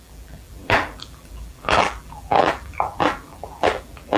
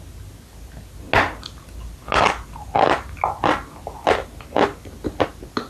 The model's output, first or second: first